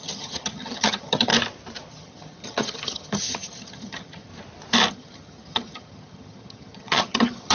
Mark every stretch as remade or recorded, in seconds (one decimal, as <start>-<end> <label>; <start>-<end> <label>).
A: 0.0-1.3 remade; 1.3-1.9 recorded; 1.9-4.3 remade; 4.3-4.9 recorded; 4.9-7.5 remade